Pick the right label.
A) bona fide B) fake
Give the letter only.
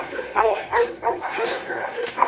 B